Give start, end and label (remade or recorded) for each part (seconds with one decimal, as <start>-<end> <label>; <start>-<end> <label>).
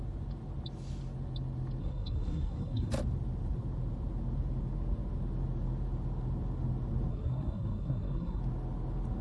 0.0-1.8 recorded; 1.8-2.9 remade; 2.9-7.1 recorded; 7.1-8.4 remade; 8.4-9.2 recorded